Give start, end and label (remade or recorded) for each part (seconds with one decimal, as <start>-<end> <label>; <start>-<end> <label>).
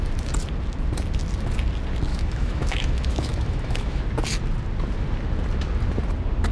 0.0-2.1 recorded; 2.1-4.0 remade; 4.0-6.5 recorded